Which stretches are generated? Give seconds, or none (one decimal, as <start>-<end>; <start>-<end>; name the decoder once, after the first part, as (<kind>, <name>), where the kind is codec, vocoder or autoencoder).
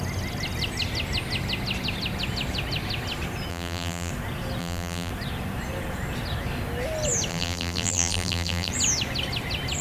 3.5-4.1 (vocoder, BigVGAN v2); 4.6-5.1; 7.3-8.7